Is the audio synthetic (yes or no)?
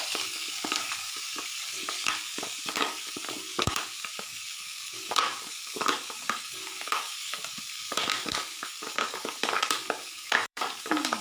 yes